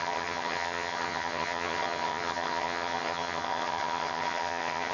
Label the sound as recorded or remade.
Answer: remade